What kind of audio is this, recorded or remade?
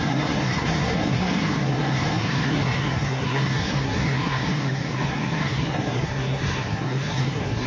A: remade